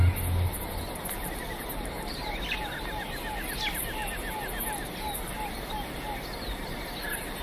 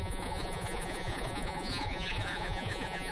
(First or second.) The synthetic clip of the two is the second